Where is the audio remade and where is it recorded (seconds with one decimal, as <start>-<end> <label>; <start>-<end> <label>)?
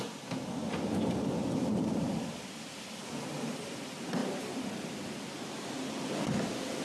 0.0-0.6 remade; 0.6-1.1 recorded; 1.1-4.2 remade; 4.2-6.2 recorded; 6.2-6.8 remade